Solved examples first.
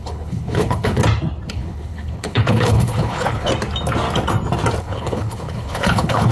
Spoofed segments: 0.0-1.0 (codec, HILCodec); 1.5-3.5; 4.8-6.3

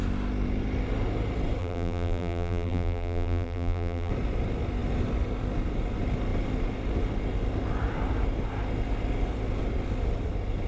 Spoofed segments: 1.6-4.1 (vocoder, BigVGAN v2)

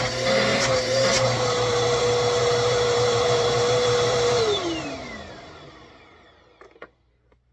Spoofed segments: 0.5-2.0 (vocoder, BigVGAN v2); 2.4-6.0

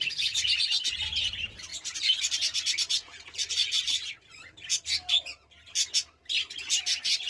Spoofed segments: 0.0-4.7 (vocoder, BigVGAN v2)

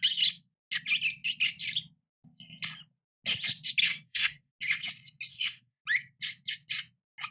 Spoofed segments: 3.8-4.5 (codec, SNAC); 5.3-5.8

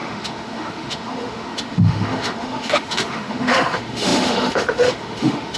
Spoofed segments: 0.0-5.6 (autoencoder, DAC-VAE)